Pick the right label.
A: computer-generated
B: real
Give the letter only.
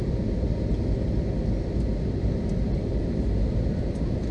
B